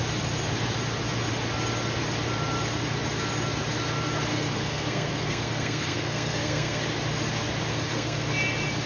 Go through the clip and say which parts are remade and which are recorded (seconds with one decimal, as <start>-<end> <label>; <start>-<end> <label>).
0.0-4.3 recorded; 4.3-6.8 remade; 6.8-7.7 recorded; 7.7-8.3 remade; 8.3-8.9 recorded